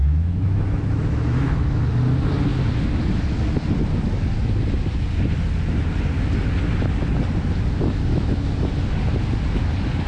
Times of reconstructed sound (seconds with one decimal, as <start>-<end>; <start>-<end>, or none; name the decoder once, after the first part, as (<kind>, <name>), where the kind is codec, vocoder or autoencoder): 0.0-1.9 (autoencoder, DAC-VAE); 8.1-8.7